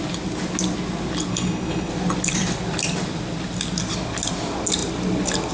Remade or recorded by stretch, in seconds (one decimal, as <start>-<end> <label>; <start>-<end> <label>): 0.0-1.3 recorded; 1.3-1.9 remade; 1.9-5.5 recorded